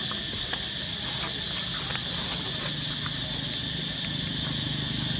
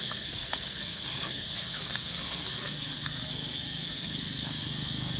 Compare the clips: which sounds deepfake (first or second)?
second